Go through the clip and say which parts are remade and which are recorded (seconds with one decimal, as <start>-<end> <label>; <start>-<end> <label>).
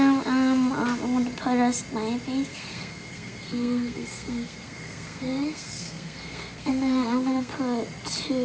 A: 0.0-2.5 recorded; 2.5-7.5 remade; 7.5-8.4 recorded